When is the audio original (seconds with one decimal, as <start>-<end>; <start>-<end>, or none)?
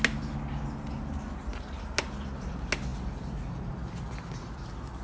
0.0-5.0